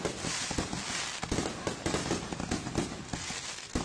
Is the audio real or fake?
real